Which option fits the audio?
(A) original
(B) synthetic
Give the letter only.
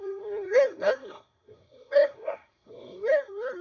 B